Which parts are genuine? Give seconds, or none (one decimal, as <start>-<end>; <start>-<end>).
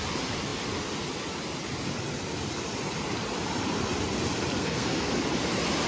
0.0-4.6; 5.1-5.9